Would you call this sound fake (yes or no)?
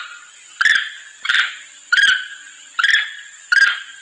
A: no